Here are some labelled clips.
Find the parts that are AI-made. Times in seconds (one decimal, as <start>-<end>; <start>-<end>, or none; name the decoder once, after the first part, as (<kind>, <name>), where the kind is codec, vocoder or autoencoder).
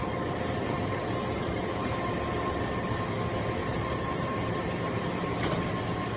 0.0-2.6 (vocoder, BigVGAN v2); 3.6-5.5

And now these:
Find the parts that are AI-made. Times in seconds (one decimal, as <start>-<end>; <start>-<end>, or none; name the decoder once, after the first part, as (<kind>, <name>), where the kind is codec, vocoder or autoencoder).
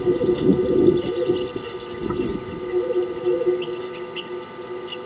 0.5-1.1 (vocoder, BigVGAN v2)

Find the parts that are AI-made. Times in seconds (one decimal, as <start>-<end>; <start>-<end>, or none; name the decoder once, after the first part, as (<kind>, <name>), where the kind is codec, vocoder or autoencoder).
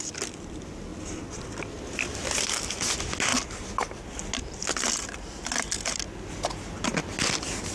none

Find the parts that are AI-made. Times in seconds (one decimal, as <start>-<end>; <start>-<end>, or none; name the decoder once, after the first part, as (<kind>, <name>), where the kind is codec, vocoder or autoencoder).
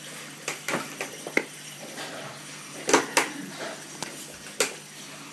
0.5-2.3 (vocoder, BigVGAN v2)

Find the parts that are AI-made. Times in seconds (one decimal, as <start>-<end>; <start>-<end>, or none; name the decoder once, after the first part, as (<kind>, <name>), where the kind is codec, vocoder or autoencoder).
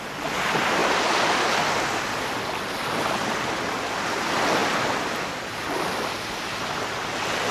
none